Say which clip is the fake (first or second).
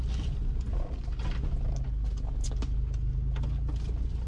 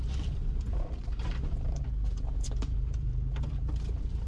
second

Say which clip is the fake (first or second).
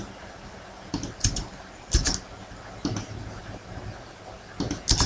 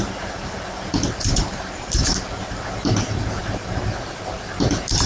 second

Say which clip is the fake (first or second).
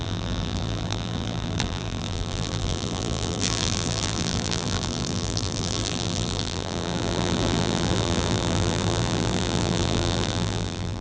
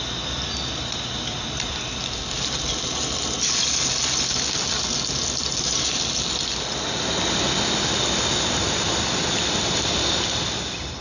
first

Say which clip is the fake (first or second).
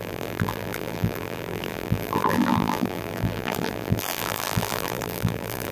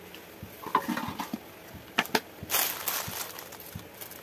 first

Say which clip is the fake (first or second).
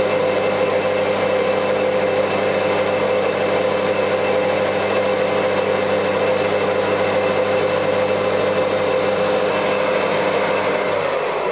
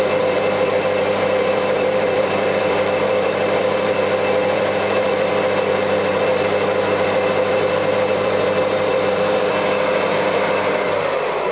second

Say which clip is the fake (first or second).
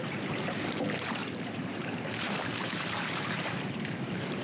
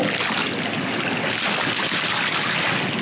first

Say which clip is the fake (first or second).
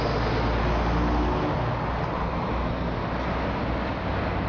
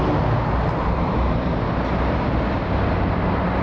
second